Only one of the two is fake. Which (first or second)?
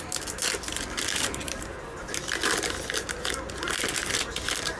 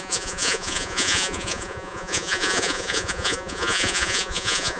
second